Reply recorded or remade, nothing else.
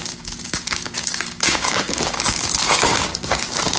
remade